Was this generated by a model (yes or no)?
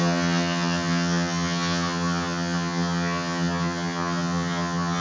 yes